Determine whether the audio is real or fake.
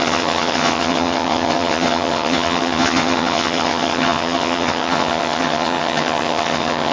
fake